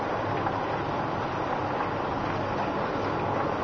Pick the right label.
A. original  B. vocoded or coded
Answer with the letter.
A